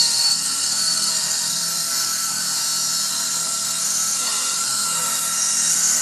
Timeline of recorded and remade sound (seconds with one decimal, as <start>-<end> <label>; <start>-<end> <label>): 0.0-2.4 remade; 2.4-3.1 recorded; 3.1-6.0 remade